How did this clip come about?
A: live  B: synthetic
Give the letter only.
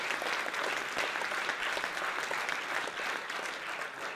A